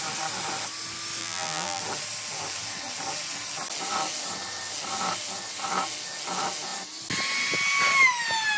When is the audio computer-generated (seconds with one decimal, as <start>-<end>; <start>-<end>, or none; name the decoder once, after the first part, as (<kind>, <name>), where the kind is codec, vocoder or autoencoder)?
1.2-1.8 (vocoder, BigVGAN v2)